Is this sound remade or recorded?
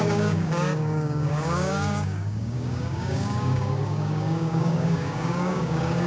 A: remade